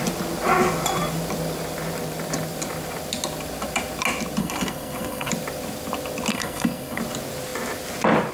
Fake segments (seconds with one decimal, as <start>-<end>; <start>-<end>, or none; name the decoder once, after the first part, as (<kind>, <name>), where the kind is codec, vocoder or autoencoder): 4.4-5.3 (codec, SNAC); 6.3-7.0